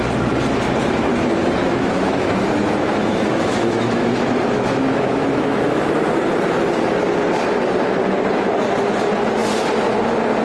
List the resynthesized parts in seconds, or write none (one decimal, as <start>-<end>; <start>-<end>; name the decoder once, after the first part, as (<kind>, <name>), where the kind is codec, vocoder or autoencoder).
1.6-6.0 (autoencoder, DAC-VAE)